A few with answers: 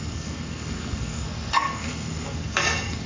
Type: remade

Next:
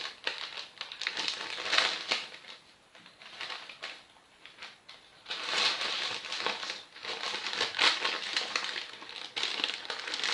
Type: recorded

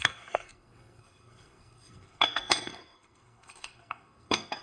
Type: remade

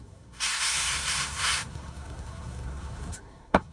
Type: remade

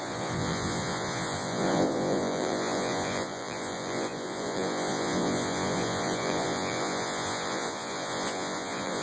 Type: remade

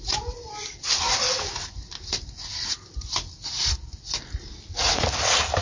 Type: recorded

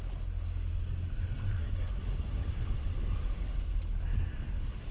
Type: recorded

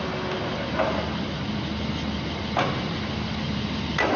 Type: recorded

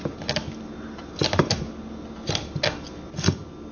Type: recorded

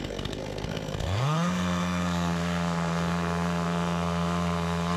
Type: remade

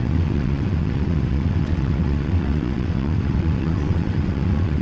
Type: remade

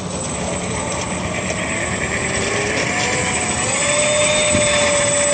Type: remade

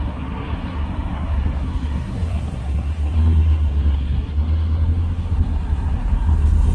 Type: remade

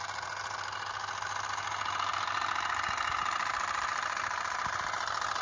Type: recorded